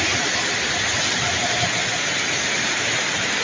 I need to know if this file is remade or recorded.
recorded